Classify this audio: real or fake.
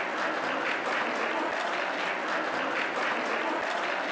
real